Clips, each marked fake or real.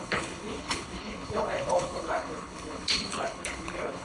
fake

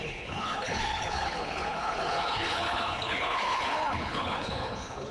fake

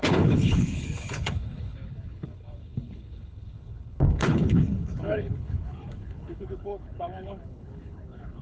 fake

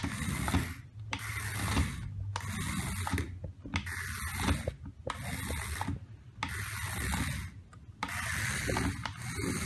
real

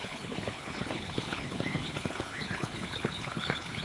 fake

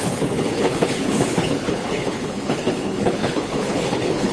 fake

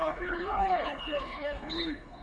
fake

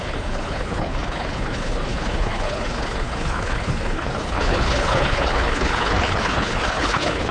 fake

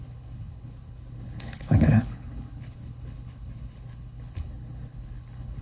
fake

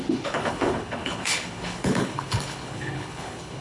fake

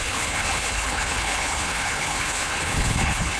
fake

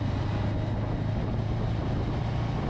real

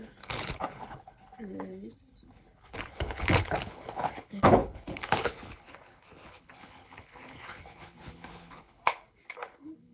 fake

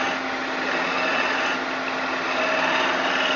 real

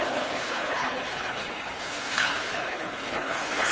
fake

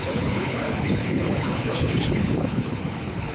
fake